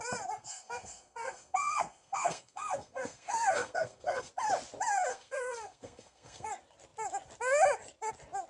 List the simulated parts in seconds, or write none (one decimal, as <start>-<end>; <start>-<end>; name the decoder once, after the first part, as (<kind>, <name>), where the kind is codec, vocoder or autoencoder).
0.4-4.3 (codec, SNAC); 5.1-6.5